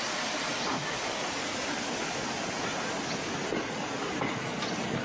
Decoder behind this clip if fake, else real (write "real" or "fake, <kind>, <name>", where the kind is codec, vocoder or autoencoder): real